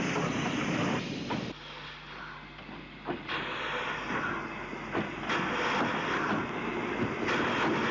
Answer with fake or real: real